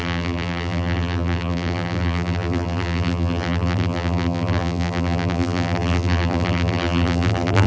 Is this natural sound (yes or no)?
no